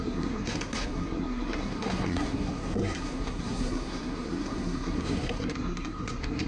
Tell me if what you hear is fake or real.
fake